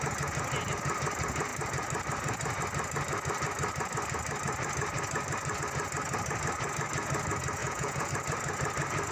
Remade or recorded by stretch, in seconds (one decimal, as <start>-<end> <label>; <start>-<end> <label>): 0.0-7.6 recorded; 7.6-8.1 remade; 8.1-9.1 recorded